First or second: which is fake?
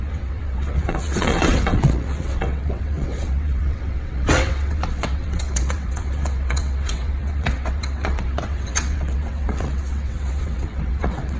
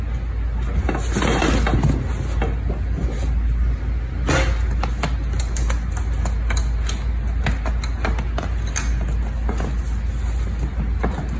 first